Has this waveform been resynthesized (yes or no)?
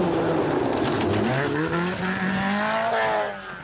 no